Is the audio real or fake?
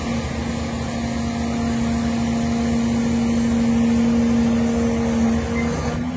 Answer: real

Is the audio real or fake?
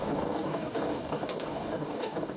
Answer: fake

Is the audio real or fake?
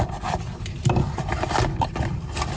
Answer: real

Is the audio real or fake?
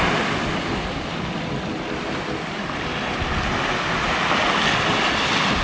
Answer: real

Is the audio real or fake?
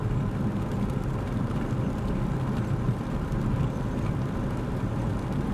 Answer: real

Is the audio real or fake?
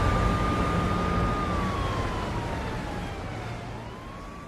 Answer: real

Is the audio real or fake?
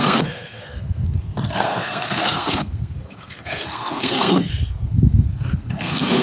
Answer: fake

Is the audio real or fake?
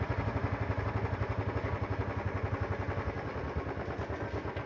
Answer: real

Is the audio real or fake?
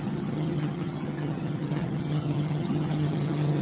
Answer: fake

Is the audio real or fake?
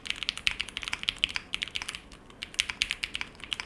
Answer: real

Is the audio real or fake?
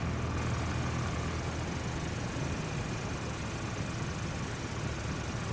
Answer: real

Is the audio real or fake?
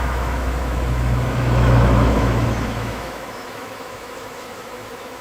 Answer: fake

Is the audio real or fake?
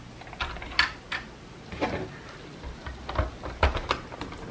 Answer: real